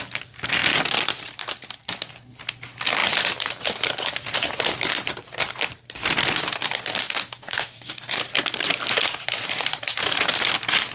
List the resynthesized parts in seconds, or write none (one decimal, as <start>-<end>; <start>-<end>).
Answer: 7.0-8.2